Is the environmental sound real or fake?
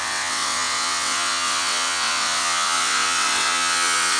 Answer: fake